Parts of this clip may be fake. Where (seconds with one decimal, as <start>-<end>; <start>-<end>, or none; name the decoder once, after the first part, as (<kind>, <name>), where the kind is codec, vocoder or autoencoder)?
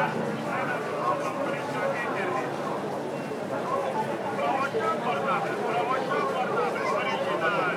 3.8-7.0 (vocoder, BigVGAN v2)